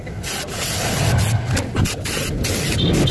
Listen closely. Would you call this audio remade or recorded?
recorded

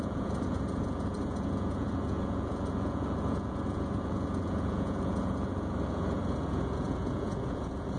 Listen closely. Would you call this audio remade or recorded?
remade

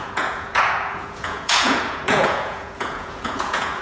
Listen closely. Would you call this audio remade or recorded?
remade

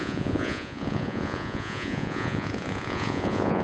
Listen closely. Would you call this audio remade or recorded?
remade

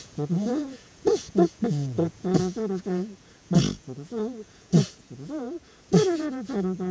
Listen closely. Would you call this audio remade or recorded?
remade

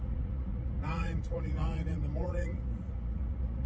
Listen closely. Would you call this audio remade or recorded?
remade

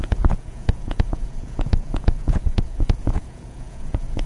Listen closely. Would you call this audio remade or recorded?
remade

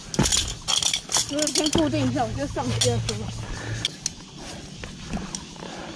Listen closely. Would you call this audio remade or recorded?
recorded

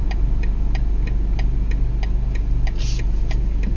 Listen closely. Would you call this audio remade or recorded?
recorded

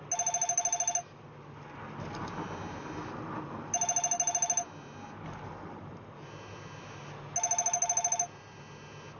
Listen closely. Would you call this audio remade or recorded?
recorded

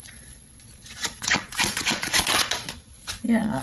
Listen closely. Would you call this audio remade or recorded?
remade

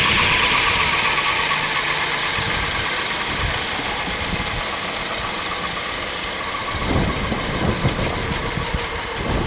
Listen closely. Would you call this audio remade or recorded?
recorded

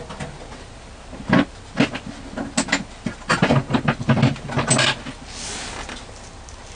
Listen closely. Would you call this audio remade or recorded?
recorded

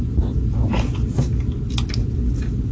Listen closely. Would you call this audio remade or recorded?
recorded